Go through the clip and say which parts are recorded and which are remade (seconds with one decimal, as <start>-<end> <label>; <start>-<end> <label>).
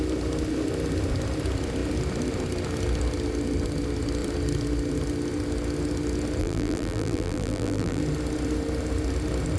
0.0-6.4 recorded; 6.4-8.0 remade; 8.0-9.6 recorded